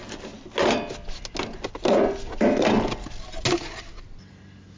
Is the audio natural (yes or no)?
yes